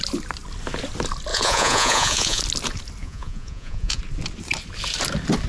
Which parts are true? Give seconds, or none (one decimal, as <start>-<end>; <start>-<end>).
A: 0.0-1.3; 2.4-3.0; 4.0-5.5